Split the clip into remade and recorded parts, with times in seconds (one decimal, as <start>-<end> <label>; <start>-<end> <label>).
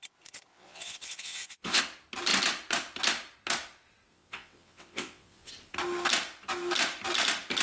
0.0-0.5 recorded; 0.5-1.8 remade; 1.8-4.1 recorded; 4.1-5.5 remade; 5.5-7.6 recorded